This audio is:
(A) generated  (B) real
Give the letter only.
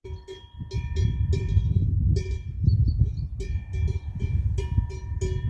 B